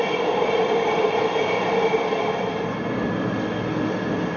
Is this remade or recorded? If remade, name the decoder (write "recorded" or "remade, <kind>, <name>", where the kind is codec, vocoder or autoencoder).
remade, vocoder, BigVGAN v2